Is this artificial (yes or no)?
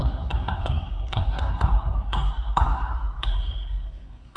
yes